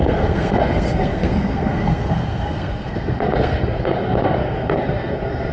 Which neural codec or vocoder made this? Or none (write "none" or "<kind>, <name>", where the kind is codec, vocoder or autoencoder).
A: codec, SNAC